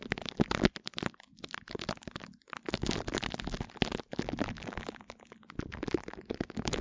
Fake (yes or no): no